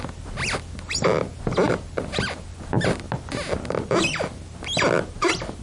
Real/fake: real